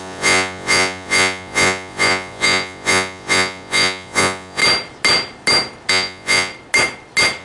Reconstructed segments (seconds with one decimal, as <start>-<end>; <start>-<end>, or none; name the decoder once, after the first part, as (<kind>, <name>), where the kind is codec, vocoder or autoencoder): 0.0-4.6 (vocoder, Vocos); 5.9-6.5